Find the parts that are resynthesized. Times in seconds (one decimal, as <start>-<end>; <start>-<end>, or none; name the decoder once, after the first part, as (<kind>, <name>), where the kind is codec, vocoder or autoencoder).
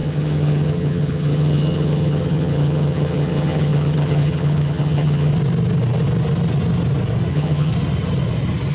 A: 0.0-5.3 (vocoder, HiFi-GAN); 7.3-7.7